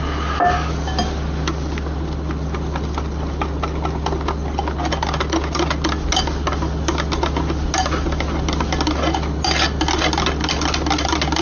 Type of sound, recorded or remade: recorded